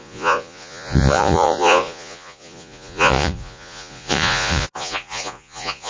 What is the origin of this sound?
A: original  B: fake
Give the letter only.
B